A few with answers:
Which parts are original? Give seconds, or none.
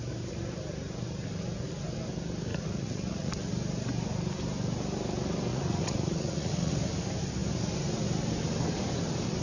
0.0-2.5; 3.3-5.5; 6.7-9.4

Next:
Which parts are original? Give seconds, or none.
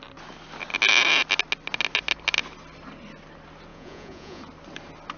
0.0-3.7; 4.4-5.2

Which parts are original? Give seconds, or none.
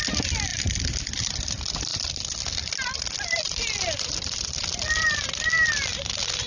0.0-6.5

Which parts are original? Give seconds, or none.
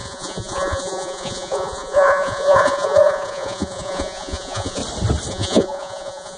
4.8-5.3